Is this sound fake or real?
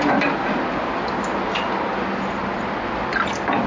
real